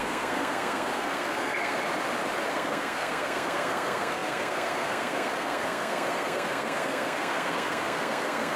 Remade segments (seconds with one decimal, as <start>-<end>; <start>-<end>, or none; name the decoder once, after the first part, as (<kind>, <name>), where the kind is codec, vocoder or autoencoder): 0.0-1.8 (codec, SNAC); 2.5-8.6